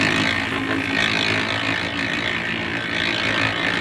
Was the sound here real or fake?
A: real